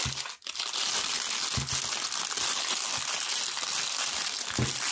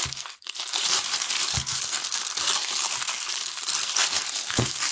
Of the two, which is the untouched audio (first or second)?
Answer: first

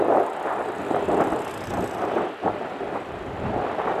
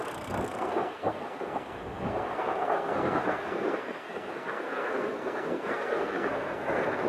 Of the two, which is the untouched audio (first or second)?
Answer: first